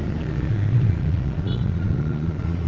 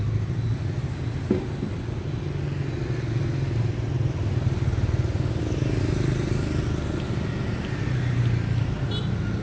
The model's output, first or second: first